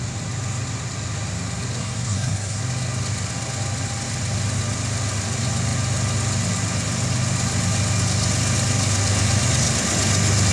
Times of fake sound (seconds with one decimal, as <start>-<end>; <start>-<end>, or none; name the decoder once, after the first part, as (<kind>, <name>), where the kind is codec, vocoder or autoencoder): 1.8-2.6 (codec, SNAC)